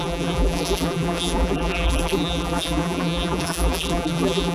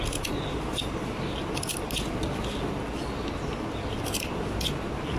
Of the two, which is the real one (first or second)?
second